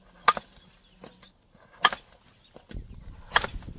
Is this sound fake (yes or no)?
no